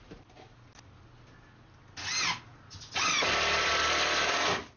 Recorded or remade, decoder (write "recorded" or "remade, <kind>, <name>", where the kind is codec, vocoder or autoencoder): recorded